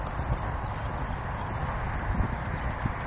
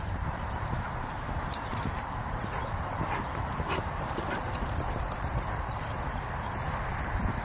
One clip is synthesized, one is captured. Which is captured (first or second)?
first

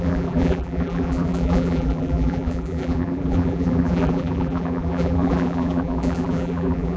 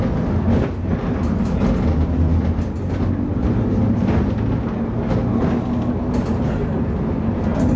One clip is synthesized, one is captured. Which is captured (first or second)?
second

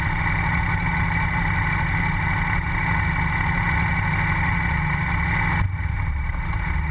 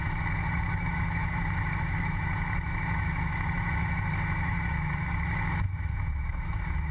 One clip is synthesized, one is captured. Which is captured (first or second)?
first